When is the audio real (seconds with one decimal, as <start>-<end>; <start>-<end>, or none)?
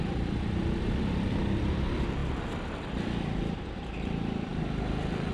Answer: 2.2-3.0; 4.5-5.3